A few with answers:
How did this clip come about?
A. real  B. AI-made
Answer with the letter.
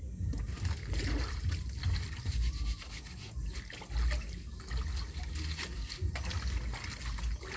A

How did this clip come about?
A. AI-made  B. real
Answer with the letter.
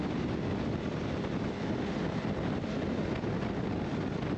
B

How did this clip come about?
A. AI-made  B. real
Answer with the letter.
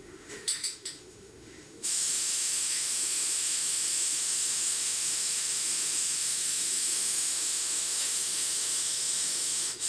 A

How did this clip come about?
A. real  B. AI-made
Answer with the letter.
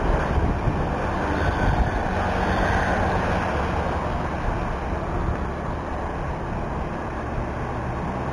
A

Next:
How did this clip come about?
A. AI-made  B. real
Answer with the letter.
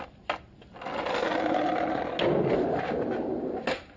B